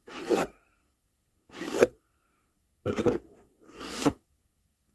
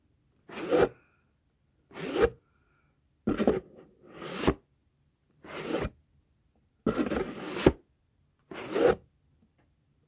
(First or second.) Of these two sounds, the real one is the second